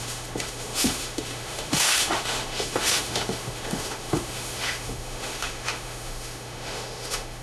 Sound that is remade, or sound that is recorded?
remade